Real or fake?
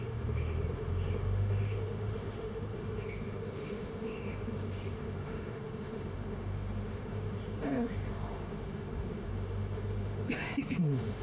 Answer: fake